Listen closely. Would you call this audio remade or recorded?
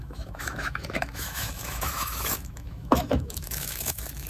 remade